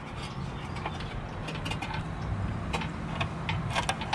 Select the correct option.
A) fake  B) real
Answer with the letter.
B